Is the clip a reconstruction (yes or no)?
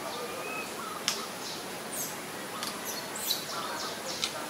no